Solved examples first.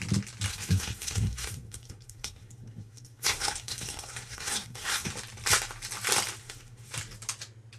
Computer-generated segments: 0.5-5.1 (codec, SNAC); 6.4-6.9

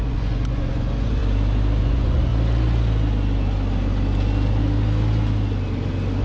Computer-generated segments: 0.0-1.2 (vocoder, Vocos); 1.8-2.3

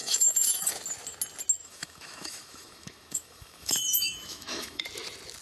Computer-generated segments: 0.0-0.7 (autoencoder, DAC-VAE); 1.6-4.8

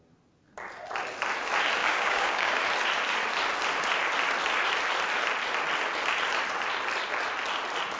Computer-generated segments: 1.8-2.6 (codec, DAC)

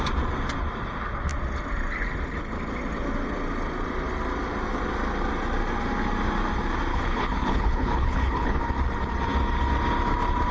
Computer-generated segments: 6.9-8.6 (codec, HILCodec)

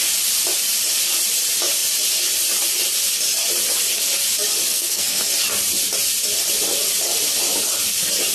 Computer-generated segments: 4.7-5.2 (codec, SNAC)

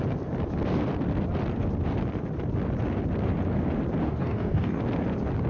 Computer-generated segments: 4.0-4.8 (codec, DAC)